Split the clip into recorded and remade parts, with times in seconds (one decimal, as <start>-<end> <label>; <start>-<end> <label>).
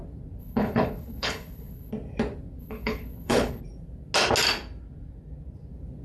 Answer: 0.0-0.4 recorded; 0.4-1.9 remade; 1.9-2.6 recorded; 2.6-3.6 remade; 3.6-6.0 recorded